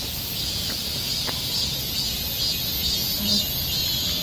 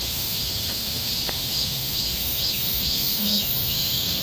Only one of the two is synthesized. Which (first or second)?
second